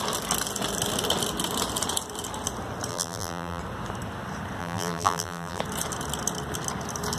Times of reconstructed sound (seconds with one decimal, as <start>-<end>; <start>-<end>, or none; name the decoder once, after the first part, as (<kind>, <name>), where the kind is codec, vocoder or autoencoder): 2.9-3.6 (vocoder, BigVGAN v2); 4.6-5.6